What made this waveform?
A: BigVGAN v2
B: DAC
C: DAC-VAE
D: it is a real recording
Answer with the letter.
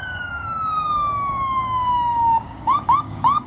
B